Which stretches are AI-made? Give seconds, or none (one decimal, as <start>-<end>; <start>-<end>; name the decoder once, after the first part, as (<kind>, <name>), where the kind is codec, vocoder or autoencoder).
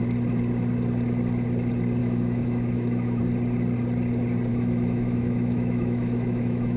2.0-3.2 (autoencoder, DAC-VAE); 4.5-6.8